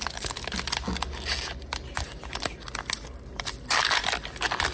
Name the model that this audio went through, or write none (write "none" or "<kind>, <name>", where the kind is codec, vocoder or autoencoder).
none